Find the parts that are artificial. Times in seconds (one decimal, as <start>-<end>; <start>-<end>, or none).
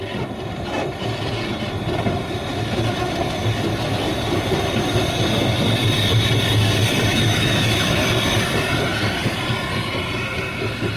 7.1-8.0